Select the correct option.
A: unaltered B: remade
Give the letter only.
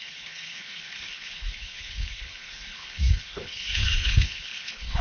B